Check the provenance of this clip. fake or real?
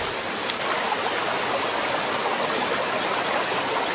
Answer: real